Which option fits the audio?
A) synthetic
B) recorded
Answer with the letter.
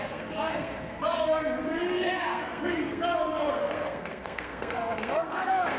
A